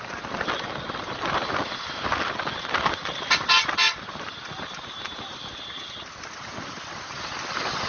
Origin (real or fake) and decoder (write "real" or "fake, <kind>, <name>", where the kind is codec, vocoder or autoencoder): real